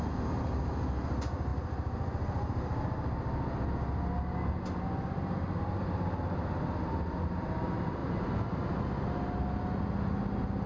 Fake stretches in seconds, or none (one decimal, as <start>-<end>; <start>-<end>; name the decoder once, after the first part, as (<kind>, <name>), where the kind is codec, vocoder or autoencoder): none